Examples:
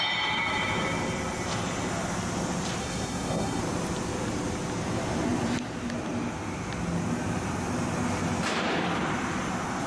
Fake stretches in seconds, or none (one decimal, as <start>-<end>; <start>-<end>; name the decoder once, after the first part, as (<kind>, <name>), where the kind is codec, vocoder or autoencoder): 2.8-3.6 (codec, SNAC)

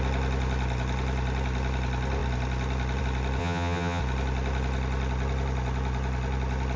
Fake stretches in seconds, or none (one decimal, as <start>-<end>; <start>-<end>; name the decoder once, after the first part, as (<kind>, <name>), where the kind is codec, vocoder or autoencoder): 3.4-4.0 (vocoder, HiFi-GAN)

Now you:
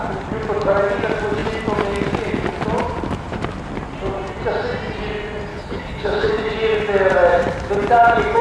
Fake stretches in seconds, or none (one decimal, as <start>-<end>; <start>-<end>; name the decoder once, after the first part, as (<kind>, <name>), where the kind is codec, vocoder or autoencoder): 5.5-6.3 (codec, HILCodec)